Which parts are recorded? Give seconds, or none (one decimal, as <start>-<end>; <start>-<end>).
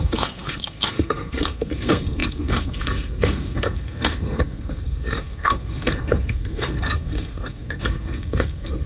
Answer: none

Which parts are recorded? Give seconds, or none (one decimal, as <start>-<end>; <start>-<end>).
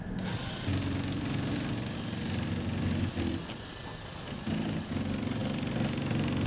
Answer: 0.0-6.5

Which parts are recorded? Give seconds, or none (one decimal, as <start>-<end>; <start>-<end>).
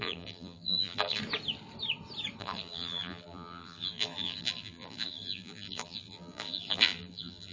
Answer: 1.2-2.4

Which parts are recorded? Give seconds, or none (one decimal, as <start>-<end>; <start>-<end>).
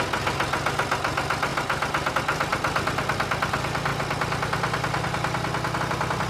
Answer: 0.0-6.3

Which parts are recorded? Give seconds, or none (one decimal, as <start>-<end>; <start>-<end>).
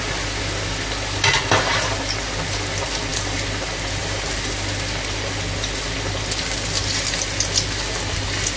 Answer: 0.0-8.6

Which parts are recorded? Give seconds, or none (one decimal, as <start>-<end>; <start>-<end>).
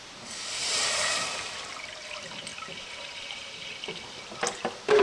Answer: 0.0-0.6; 1.7-2.5; 3.6-5.0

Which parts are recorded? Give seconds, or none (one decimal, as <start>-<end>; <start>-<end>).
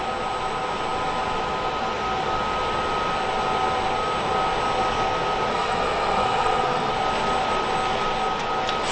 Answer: 0.0-5.5; 6.9-8.9